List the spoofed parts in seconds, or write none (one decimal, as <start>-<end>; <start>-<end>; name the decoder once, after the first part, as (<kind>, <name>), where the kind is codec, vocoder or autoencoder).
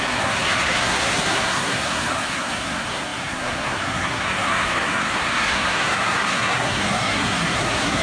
0.0-8.0 (codec, SNAC)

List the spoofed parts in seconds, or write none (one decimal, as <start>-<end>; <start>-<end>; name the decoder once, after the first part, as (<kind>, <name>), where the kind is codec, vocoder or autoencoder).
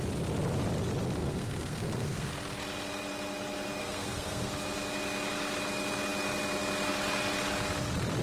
1.2-2.3 (codec, SNAC); 3.8-4.5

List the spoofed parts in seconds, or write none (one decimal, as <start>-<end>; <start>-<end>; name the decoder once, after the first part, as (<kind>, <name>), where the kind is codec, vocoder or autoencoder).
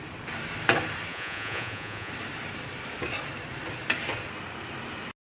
1.1-2.1 (vocoder, Vocos)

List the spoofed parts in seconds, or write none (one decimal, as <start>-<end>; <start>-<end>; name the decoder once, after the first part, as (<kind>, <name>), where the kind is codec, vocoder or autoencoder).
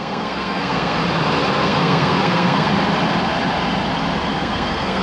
0.0-1.0 (codec, SNAC); 1.6-2.7; 4.4-5.0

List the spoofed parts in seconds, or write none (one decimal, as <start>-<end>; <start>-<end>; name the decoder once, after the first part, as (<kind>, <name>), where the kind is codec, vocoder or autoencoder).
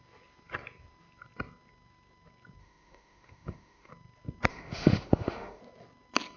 2.6-3.9 (autoencoder, DAC-VAE); 4.5-5.6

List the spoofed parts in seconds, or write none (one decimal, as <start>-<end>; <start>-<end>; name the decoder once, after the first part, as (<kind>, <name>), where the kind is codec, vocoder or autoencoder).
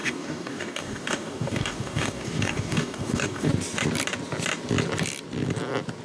0.0-3.5 (codec, DAC)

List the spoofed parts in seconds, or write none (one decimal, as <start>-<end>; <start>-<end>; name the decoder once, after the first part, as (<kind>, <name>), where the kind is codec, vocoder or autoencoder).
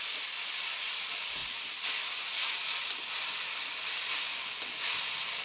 none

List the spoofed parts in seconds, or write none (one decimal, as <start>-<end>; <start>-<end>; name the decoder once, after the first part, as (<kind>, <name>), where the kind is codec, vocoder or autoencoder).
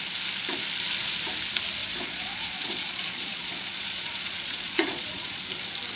1.8-5.4 (vocoder, Vocos)